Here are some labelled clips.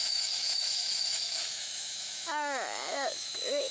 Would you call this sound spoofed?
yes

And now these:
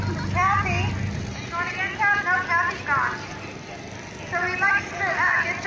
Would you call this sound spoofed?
no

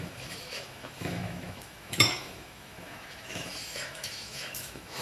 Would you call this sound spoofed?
yes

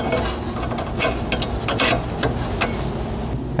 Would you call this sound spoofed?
no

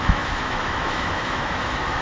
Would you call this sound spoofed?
yes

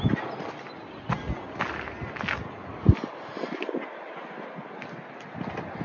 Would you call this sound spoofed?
no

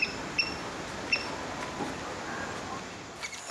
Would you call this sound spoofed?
no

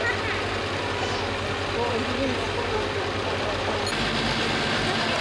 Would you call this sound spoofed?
no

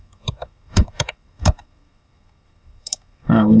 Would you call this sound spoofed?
yes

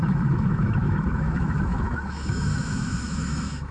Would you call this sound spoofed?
yes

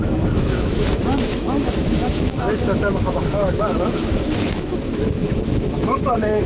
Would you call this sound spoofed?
yes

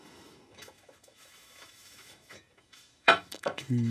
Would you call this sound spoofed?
yes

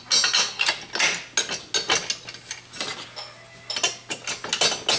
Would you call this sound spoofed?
no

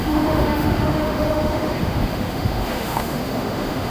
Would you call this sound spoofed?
yes